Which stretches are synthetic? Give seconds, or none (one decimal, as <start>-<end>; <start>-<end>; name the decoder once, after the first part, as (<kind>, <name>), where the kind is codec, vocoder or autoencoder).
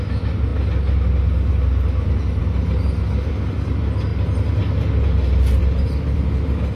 none